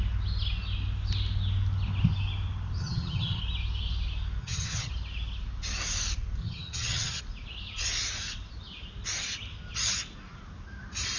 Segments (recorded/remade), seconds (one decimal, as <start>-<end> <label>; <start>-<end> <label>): 0.0-2.8 recorded; 2.8-3.4 remade; 3.4-4.4 recorded; 4.4-4.9 remade; 4.9-6.4 recorded; 6.4-7.2 remade; 7.2-11.2 recorded